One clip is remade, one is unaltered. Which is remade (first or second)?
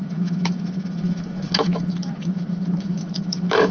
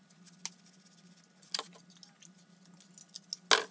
first